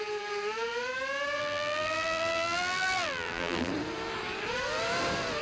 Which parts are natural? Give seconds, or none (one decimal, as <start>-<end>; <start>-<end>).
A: 0.0-1.4; 3.7-5.4